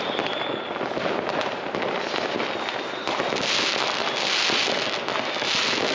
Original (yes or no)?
yes